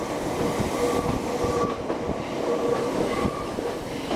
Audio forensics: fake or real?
real